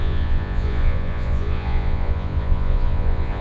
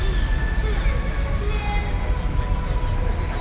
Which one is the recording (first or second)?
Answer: second